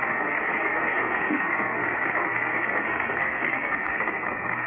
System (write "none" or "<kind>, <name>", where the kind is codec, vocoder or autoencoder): codec, SNAC